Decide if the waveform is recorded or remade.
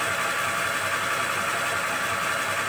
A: recorded